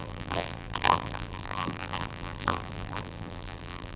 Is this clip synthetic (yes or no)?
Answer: yes